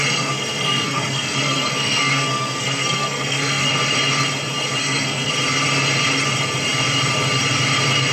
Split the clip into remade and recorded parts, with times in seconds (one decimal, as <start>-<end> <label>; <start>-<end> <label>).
0.0-3.7 remade; 3.7-4.8 recorded; 4.8-5.3 remade; 5.3-8.1 recorded